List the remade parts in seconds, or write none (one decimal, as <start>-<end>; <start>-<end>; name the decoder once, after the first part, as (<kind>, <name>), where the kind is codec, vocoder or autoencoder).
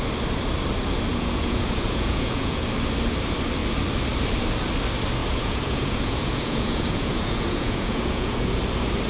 1.1-2.6 (vocoder, Vocos); 5.2-8.6